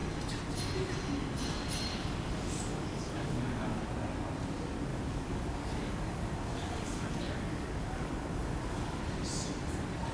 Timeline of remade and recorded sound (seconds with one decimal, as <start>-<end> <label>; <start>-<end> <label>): 0.0-1.9 recorded; 1.9-3.8 remade; 3.8-4.9 recorded; 4.9-9.0 remade; 9.0-10.1 recorded

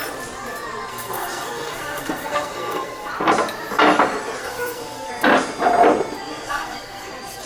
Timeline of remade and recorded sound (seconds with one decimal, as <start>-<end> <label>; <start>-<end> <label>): 0.0-0.9 recorded; 0.9-3.1 remade; 3.1-4.4 recorded; 4.4-5.1 remade; 5.1-6.3 recorded; 6.3-7.1 remade; 7.1-7.5 recorded

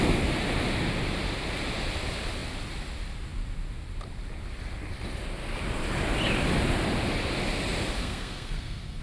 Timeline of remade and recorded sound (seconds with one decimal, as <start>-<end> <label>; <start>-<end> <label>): 0.0-8.0 recorded; 8.0-9.0 remade

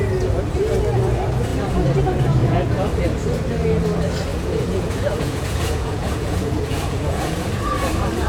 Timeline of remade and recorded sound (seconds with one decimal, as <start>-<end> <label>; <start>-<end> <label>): 0.0-2.4 recorded; 2.4-2.9 remade; 2.9-4.3 recorded; 4.3-7.6 remade; 7.6-8.3 recorded

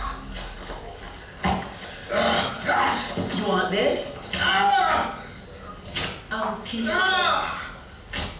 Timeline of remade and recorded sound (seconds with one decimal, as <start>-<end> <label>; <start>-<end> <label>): 0.0-8.4 recorded

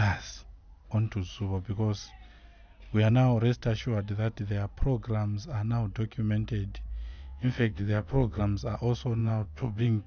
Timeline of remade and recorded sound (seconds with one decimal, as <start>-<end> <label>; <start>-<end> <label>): 0.0-7.1 recorded; 7.1-8.4 remade; 8.4-9.2 recorded; 9.2-10.1 remade

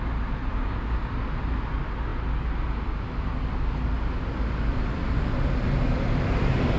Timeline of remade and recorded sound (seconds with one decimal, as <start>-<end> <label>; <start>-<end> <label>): 0.0-0.5 recorded; 0.5-1.1 remade; 1.1-6.8 recorded

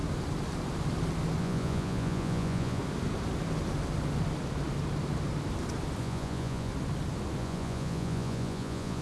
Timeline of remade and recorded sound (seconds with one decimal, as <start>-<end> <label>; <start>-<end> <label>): 0.0-1.4 recorded; 1.4-2.8 remade; 2.8-6.0 recorded; 6.0-6.7 remade; 6.7-7.4 recorded; 7.4-9.0 remade